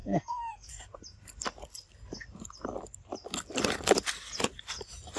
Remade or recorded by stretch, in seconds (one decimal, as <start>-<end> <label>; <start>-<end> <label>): 0.0-0.7 remade; 0.7-5.2 recorded